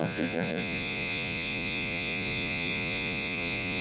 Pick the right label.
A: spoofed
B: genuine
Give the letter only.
A